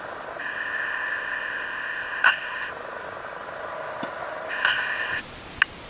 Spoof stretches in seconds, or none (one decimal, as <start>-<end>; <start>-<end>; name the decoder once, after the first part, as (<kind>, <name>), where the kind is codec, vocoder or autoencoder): 0.4-2.7 (codec, ZipCodec); 4.5-5.2